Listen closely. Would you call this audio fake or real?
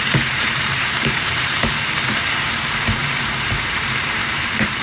fake